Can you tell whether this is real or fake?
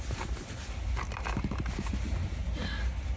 real